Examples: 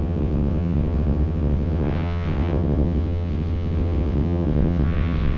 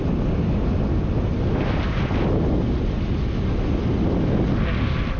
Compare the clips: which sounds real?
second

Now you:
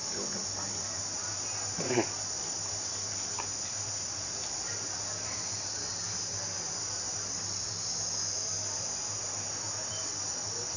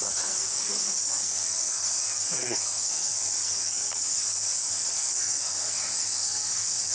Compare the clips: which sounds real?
first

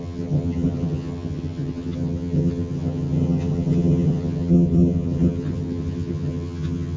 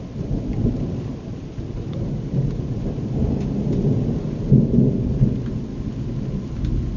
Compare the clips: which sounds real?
second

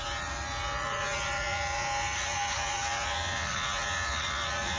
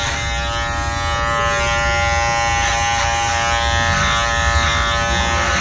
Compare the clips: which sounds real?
second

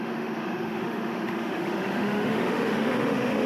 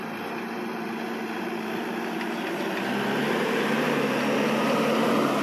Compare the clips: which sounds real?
second